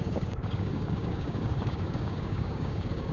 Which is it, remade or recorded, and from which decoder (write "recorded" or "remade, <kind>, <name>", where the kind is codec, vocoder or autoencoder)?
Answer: remade, codec, DAC